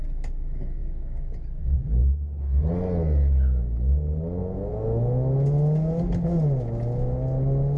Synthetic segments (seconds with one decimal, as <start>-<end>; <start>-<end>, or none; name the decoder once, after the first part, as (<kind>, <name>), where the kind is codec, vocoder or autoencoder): 2.0-2.7 (codec, HILCodec)